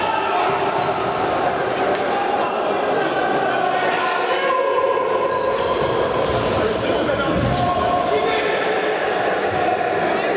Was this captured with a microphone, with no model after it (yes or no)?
yes